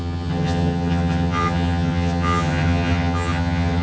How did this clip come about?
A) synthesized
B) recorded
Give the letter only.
A